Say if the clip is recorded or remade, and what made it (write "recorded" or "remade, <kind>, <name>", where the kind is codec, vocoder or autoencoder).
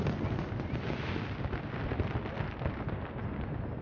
recorded